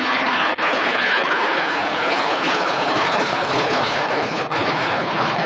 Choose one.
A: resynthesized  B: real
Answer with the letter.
A